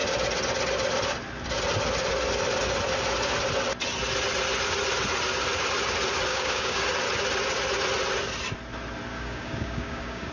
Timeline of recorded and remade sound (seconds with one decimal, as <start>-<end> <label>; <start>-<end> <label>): 0.0-6.3 recorded; 6.3-6.8 remade; 6.8-9.1 recorded; 9.1-10.3 remade